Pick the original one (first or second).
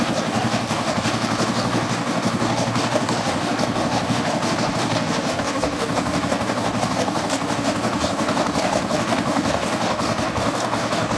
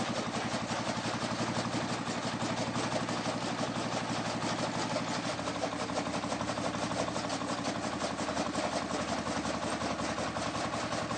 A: second